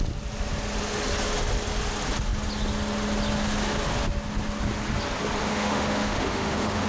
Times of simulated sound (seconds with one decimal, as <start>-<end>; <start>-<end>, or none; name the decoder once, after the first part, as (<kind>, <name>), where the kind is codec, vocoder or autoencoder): 5.4-6.9 (autoencoder, DAC-VAE)